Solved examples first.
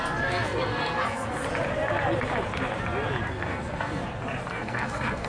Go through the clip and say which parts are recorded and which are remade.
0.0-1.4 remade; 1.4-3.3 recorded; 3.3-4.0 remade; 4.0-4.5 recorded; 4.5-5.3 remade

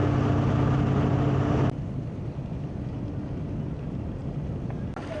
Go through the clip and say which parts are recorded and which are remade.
0.0-5.2 recorded